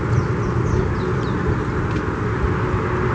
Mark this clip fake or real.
real